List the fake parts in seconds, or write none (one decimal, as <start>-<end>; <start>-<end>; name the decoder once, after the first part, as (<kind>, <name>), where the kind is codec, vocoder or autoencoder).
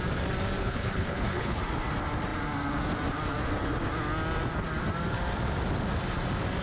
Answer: 0.6-1.6 (codec, HILCodec)